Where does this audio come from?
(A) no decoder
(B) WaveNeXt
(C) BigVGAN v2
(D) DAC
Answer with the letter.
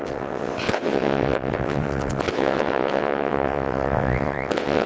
B